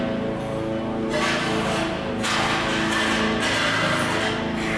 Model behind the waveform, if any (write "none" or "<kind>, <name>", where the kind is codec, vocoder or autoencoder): none